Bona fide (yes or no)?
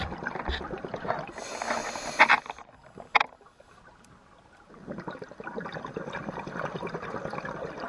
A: yes